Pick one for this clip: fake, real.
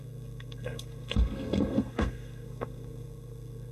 fake